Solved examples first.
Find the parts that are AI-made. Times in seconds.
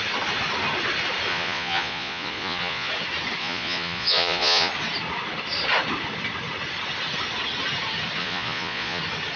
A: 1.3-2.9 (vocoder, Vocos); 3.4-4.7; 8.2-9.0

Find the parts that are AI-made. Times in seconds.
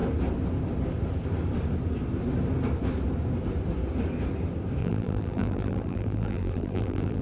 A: 4.8-7.2 (vocoder, BigVGAN v2)